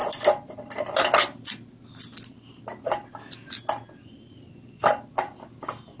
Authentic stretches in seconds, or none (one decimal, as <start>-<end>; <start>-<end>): 0.0-6.0